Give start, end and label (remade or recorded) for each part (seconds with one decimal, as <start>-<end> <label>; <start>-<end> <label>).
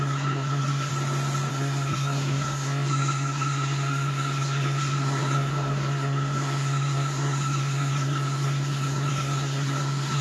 0.0-0.9 remade; 0.9-1.5 recorded; 1.5-10.2 remade